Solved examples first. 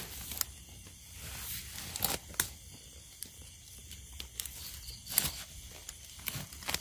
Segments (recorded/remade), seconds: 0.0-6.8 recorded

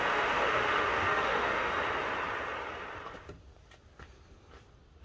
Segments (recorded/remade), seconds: 0.0-1.7 remade; 1.7-5.0 recorded

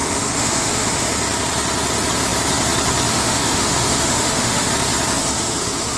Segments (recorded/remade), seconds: 0.0-1.1 remade; 1.1-3.1 recorded; 3.1-4.7 remade; 4.7-5.2 recorded; 5.2-6.0 remade

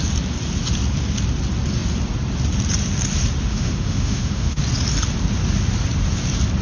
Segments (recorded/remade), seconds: 0.0-3.5 recorded; 3.5-4.6 remade; 4.6-6.6 recorded

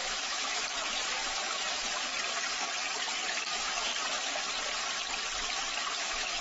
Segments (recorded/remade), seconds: 0.0-2.1 remade; 2.1-3.4 recorded; 3.4-3.9 remade; 3.9-6.0 recorded; 6.0-6.4 remade

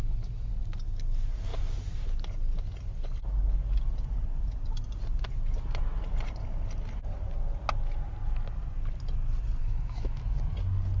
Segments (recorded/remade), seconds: 0.0-0.5 remade; 0.5-9.6 recorded; 9.6-10.2 remade; 10.2-11.0 recorded

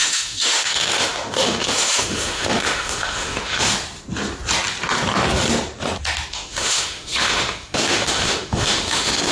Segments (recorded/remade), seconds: 0.0-3.7 remade; 3.7-6.3 recorded; 6.3-9.3 remade

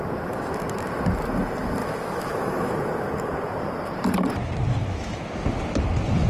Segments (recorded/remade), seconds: 0.0-1.8 recorded; 1.8-2.7 remade; 2.7-4.8 recorded; 4.8-5.3 remade; 5.3-6.3 recorded